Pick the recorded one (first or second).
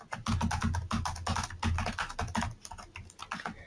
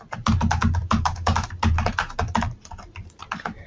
first